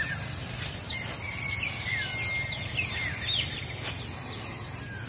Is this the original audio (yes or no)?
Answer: yes